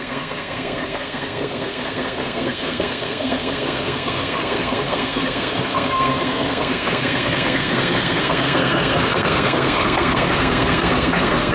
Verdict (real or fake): fake